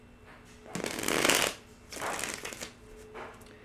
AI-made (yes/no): no